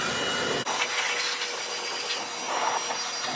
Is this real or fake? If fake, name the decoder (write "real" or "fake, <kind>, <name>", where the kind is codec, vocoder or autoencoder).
real